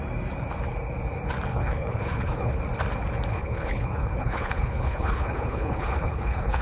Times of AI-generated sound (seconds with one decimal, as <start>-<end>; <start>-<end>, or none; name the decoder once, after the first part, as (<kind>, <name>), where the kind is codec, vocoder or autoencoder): 1.5-2.6 (codec, HILCodec); 3.3-6.6